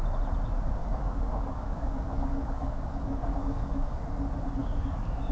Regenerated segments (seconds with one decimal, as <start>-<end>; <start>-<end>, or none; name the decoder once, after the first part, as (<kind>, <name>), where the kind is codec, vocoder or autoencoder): 0.8-4.0 (codec, DAC); 4.6-5.3